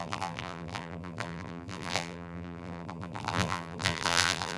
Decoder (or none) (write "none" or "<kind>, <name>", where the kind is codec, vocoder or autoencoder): vocoder, BigVGAN v2